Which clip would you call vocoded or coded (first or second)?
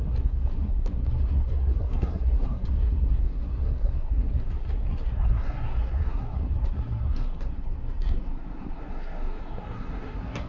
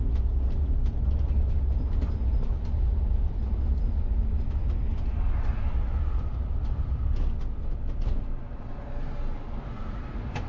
first